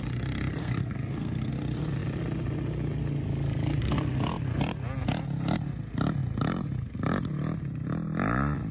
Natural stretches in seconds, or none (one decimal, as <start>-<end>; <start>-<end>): 0.0-0.6; 1.5-8.7

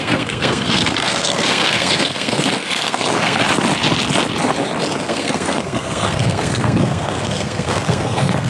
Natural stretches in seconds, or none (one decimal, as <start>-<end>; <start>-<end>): 3.4-5.0

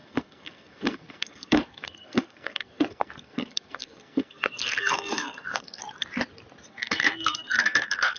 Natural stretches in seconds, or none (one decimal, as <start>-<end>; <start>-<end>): 5.8-6.7

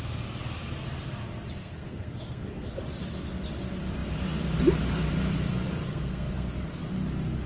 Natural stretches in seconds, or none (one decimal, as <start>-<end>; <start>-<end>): 0.0-1.6; 2.7-5.9; 6.5-7.5